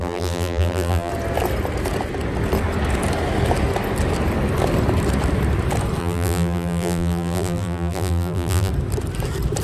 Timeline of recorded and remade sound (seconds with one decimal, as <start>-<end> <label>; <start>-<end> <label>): 0.0-1.1 remade; 1.1-6.0 recorded; 6.0-8.7 remade; 8.7-9.6 recorded